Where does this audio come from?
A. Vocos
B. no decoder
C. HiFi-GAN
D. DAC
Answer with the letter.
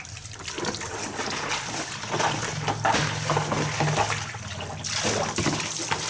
B